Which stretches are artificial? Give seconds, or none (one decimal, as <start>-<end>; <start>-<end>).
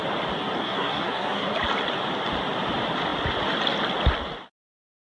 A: 0.6-1.5